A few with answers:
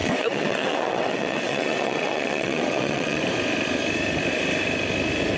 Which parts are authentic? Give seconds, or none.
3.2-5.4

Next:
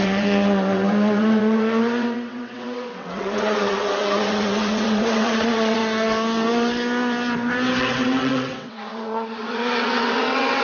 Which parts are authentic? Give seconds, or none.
5.8-7.8

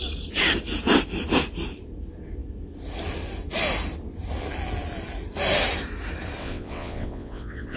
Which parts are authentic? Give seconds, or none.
0.0-6.4

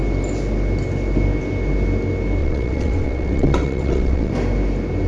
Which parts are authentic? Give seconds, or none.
0.0-2.4; 4.3-5.1